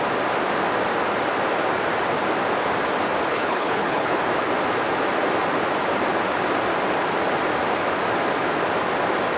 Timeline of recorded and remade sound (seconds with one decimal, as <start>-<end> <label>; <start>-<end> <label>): 0.0-3.3 recorded; 3.3-4.2 remade; 4.2-9.4 recorded